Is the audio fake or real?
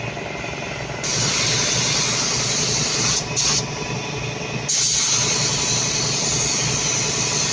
real